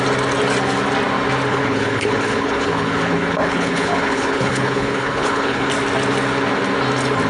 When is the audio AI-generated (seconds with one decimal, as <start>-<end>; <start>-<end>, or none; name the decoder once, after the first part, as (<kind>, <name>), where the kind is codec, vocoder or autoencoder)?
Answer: 1.5-5.7 (codec, HILCodec)